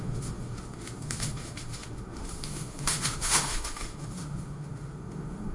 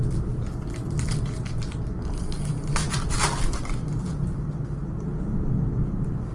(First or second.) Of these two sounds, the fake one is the first